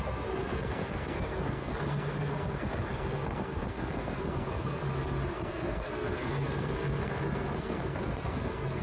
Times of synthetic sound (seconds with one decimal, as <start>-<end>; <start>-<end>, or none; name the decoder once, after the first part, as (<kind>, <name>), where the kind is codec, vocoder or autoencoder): 0.0-4.8 (codec, SNAC); 5.3-8.8